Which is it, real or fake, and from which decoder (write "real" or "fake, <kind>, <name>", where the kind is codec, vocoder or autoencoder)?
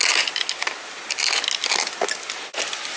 real